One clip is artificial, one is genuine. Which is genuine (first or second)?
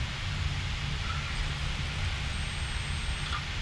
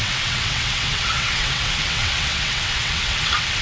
first